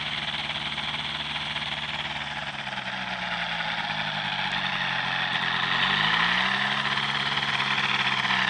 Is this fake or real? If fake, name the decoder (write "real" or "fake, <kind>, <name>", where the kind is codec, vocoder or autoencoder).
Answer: real